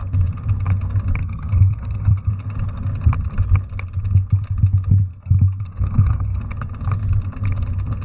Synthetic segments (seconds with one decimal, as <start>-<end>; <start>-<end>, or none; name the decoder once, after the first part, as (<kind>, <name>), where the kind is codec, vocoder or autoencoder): 1.2-2.3 (codec, SNAC); 5.1-6.4

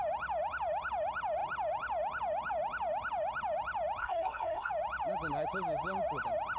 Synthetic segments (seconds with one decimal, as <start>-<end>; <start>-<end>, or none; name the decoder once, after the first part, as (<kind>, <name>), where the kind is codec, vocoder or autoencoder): 4.0-4.7 (codec, SNAC)

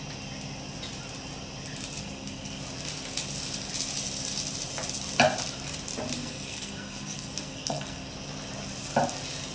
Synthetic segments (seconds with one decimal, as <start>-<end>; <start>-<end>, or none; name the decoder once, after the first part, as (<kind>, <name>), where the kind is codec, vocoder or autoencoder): 2.0-2.6 (codec, SNAC); 6.2-8.1

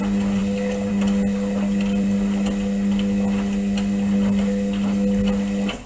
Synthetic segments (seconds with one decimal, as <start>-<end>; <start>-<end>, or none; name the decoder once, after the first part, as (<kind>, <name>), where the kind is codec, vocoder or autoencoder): none

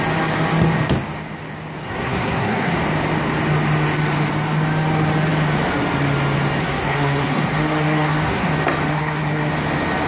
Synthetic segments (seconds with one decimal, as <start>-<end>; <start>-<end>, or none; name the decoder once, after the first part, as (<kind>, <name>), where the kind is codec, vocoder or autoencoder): 1.8-2.8 (codec, SNAC); 6.6-8.5; 8.9-9.5

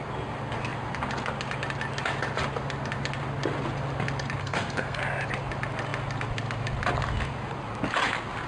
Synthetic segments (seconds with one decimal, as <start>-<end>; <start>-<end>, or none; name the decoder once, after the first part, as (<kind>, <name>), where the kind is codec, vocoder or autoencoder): 4.4-5.0 (codec, SNAC)

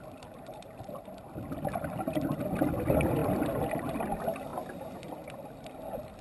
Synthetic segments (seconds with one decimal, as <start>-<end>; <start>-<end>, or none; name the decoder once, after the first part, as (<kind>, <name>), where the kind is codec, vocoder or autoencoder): none